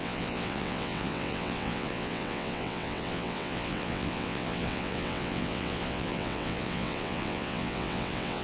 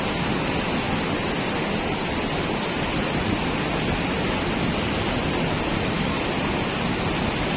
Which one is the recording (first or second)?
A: second